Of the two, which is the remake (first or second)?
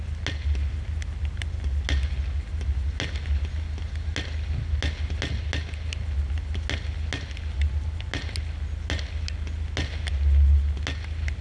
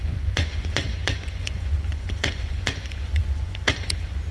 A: second